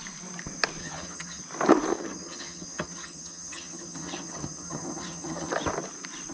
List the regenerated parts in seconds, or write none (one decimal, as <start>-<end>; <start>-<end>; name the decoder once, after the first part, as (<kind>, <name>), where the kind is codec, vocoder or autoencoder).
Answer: 0.8-1.4 (vocoder, HiFi-GAN); 1.9-5.5